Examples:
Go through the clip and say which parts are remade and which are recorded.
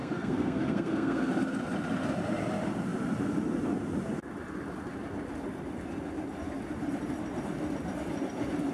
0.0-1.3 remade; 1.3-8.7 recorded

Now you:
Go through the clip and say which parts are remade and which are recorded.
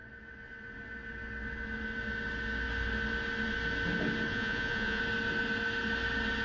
0.0-4.3 recorded; 4.3-5.0 remade; 5.0-6.4 recorded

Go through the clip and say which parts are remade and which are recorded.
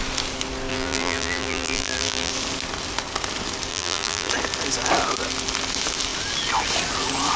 0.0-0.7 recorded; 0.7-2.3 remade; 2.3-3.7 recorded; 3.7-4.3 remade; 4.3-7.4 recorded